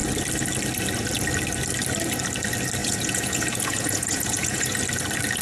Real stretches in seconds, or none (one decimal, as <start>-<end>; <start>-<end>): 0.0-2.8; 4.8-5.4